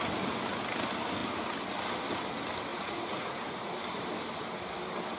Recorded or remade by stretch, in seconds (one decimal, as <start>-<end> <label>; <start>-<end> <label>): 0.0-2.7 recorded; 2.7-3.7 remade; 3.7-5.2 recorded